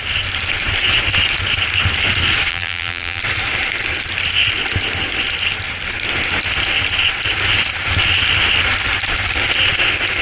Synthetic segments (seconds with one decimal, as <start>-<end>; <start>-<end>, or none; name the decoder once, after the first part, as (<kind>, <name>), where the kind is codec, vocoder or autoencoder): 2.5-3.2 (vocoder, BigVGAN v2)